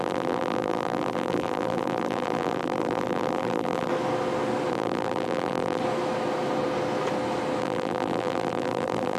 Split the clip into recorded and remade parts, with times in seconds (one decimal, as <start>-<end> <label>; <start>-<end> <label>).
0.0-3.9 remade; 3.9-4.7 recorded; 4.7-5.8 remade; 5.8-7.6 recorded; 7.6-9.2 remade